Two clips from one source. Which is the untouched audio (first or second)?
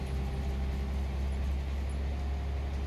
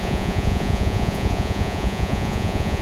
first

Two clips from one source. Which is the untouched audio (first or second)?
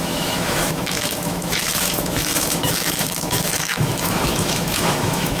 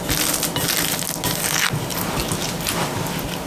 second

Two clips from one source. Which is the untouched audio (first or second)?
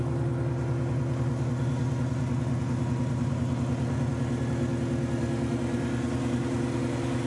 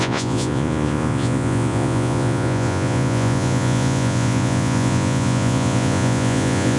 first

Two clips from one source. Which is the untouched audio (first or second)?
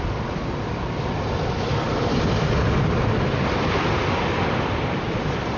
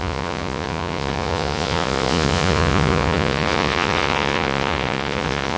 first